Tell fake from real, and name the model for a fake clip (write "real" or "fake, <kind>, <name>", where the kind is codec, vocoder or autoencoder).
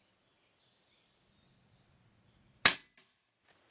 real